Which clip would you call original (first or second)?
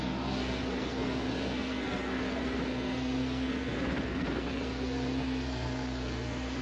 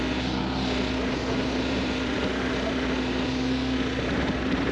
second